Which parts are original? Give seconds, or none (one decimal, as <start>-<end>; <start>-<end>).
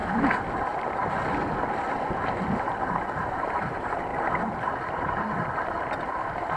0.0-3.1; 4.1-5.0